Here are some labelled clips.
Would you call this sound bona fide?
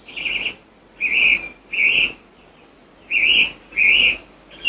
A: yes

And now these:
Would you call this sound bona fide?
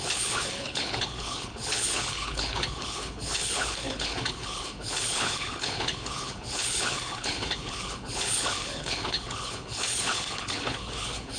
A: no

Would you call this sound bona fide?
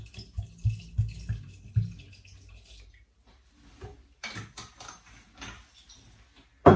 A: yes